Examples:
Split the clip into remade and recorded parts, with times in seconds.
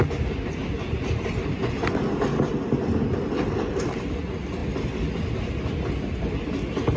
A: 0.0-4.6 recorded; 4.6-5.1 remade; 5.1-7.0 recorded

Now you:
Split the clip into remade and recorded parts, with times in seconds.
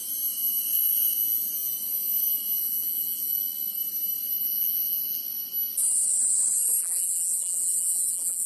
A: 0.0-2.6 recorded; 2.6-3.3 remade; 3.3-4.4 recorded; 4.4-5.2 remade; 5.2-6.8 recorded; 6.8-8.5 remade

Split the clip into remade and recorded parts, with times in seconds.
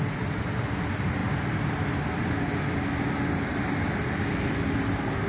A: 0.0-5.3 recorded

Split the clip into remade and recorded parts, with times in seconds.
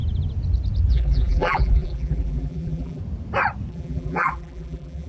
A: 0.0-0.9 recorded; 0.9-3.0 remade; 3.0-3.7 recorded; 3.7-5.1 remade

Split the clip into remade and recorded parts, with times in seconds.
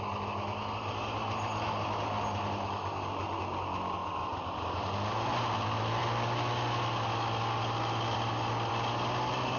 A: 0.0-4.0 recorded; 4.0-5.4 remade; 5.4-9.6 recorded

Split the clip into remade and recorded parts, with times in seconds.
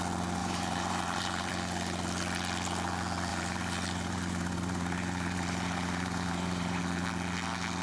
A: 0.0-0.4 recorded; 0.4-1.5 remade; 1.5-3.3 recorded; 3.3-6.8 remade; 6.8-7.8 recorded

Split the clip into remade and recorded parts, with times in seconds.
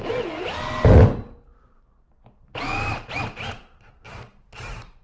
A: 0.0-2.7 recorded; 2.7-4.2 remade; 4.2-5.0 recorded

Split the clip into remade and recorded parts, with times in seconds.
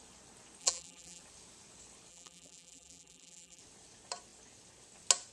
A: 0.0-0.6 recorded; 0.6-1.2 remade; 1.2-2.1 recorded; 2.1-3.6 remade; 3.6-5.3 recorded